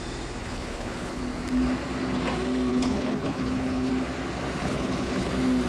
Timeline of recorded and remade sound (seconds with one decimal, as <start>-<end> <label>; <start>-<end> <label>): 0.0-0.4 recorded; 0.4-1.2 remade; 1.2-2.7 recorded; 2.7-3.9 remade; 3.9-4.6 recorded; 4.6-5.3 remade; 5.3-5.7 recorded

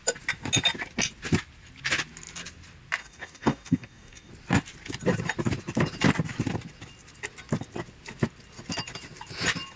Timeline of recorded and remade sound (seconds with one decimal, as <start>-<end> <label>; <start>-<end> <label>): 0.0-3.0 recorded; 3.0-4.3 remade; 4.3-9.8 recorded

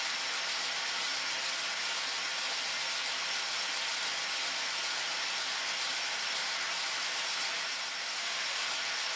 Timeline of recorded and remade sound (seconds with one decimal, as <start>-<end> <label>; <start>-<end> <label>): 0.0-8.0 recorded; 8.0-8.7 remade; 8.7-9.2 recorded

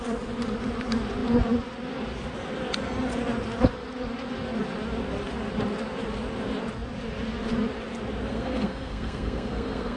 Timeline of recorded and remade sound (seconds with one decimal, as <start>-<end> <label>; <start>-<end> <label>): 0.0-8.3 recorded; 8.3-10.0 remade

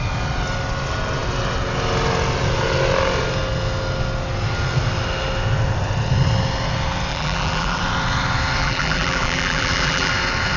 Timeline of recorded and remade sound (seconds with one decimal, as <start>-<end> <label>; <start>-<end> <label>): 0.0-7.1 recorded; 7.1-7.8 remade; 7.8-8.6 recorded; 8.6-10.1 remade; 10.1-10.6 recorded

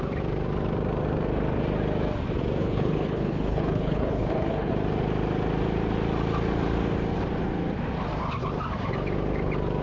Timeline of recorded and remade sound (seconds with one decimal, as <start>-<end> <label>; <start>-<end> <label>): 0.0-2.6 recorded; 2.6-4.7 remade; 4.7-9.8 recorded

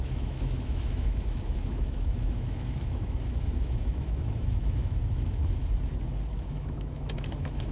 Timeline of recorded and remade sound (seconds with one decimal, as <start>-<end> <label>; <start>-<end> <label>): 0.0-5.6 remade; 5.6-6.3 recorded; 6.3-7.7 remade